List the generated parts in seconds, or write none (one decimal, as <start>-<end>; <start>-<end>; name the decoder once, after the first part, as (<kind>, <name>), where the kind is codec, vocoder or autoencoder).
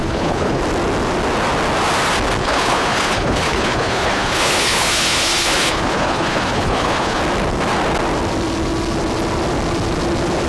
0.0-0.6 (codec, HILCodec); 2.4-7.2